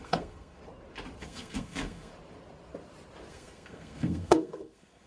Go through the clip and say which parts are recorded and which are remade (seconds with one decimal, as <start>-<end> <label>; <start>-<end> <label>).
0.0-0.6 remade; 0.6-1.2 recorded; 1.2-2.1 remade; 2.1-3.3 recorded; 3.3-5.1 remade